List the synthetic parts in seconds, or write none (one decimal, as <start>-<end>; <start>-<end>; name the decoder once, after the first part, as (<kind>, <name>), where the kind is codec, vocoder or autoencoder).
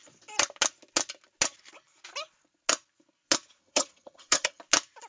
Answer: 3.6-4.6 (vocoder, HiFi-GAN)